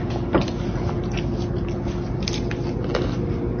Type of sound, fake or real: real